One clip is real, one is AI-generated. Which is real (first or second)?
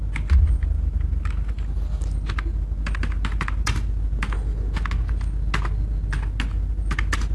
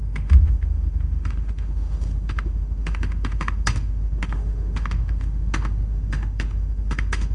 first